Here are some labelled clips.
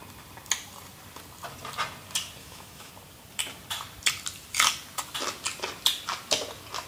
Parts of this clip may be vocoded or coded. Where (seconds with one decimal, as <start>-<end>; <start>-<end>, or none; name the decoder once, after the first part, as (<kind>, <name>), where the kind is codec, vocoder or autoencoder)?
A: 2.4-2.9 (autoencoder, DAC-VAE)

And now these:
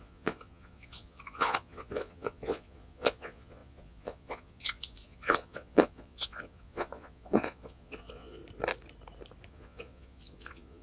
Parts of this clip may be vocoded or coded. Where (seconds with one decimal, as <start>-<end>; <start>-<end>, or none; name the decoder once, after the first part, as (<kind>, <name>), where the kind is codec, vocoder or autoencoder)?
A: 0.0-8.4 (vocoder, Vocos); 9.5-10.8

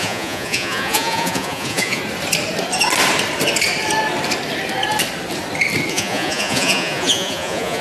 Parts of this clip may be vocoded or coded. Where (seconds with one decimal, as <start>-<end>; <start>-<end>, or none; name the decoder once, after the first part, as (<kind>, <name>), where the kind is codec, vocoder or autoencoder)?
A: 0.0-2.0 (vocoder, Vocos); 5.9-7.8